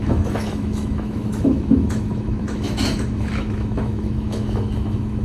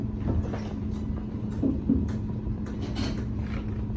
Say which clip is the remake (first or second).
first